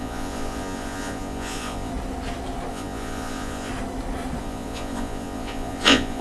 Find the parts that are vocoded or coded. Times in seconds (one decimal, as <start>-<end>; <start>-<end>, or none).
0.0-1.9; 2.7-3.7; 4.4-6.2